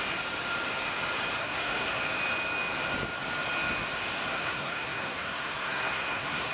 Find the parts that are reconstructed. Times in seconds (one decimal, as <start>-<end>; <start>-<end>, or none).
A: 1.4-2.0; 4.3-6.5